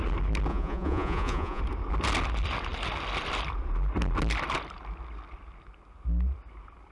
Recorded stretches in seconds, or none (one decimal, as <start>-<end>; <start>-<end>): 0.0-0.5; 1.6-6.9

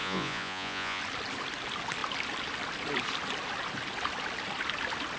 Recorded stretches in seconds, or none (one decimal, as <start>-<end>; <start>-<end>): 1.0-5.2

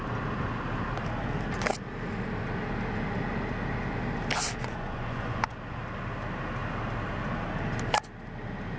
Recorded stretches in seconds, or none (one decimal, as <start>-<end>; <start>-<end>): 0.0-4.6; 5.5-8.8

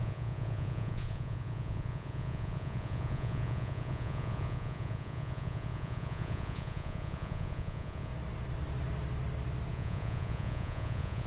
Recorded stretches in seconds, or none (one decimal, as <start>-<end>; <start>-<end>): 8.1-9.7